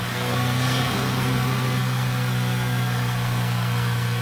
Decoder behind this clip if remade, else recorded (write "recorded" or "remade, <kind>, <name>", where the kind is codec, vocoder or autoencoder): remade, codec, SNAC